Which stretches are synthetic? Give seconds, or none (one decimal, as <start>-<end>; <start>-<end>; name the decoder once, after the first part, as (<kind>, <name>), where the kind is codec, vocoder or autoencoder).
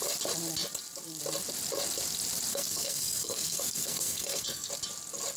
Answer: 2.5-4.7 (codec, SNAC)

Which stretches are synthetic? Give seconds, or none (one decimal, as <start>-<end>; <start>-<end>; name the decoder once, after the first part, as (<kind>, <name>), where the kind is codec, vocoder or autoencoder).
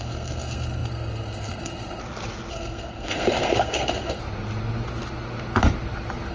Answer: 0.0-2.0 (codec, SNAC); 2.5-4.2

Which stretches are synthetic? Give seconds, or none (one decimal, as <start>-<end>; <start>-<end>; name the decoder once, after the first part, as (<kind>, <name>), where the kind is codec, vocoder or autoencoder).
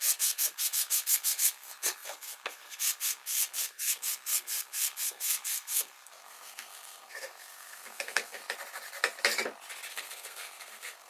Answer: 0.0-8.4 (codec, SNAC); 9.9-11.1